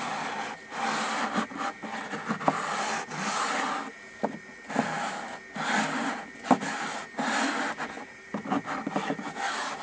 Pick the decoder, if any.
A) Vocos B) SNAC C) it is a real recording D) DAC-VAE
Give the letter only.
C